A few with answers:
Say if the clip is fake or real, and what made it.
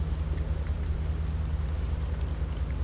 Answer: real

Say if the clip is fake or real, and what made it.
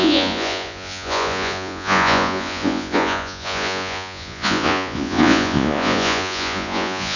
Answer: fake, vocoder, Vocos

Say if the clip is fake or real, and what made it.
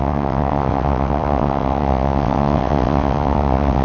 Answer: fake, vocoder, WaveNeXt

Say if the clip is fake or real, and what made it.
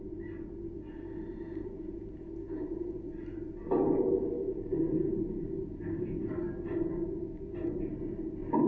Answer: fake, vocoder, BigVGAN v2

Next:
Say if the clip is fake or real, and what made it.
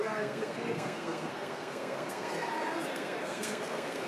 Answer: fake, codec, SNAC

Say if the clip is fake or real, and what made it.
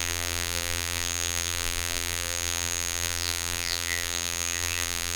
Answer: fake, vocoder, BigVGAN v2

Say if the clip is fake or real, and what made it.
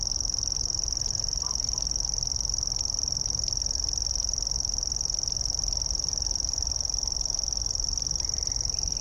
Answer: real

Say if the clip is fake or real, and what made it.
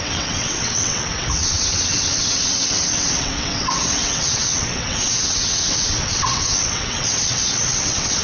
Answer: fake, vocoder, WaveNeXt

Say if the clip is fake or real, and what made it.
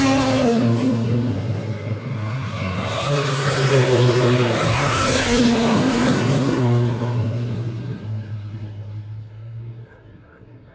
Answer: fake, codec, SNAC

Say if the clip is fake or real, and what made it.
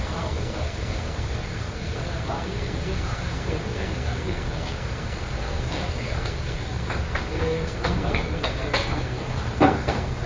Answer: fake, codec, SNAC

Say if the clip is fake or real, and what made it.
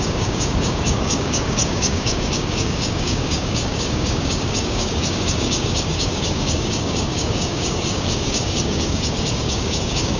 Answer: fake, codec, DAC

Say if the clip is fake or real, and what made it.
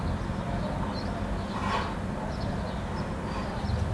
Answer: real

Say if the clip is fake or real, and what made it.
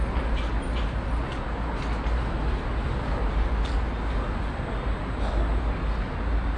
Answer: real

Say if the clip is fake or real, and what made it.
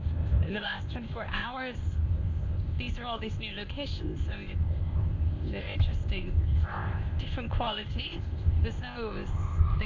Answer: fake, codec, ZipCodec